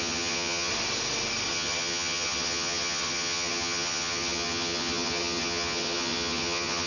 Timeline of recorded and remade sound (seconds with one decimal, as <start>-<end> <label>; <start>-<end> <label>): 0.0-0.7 remade; 0.7-1.5 recorded; 1.5-6.9 remade